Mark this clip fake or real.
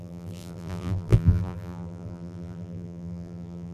fake